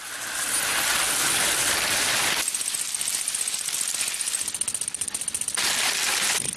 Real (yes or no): yes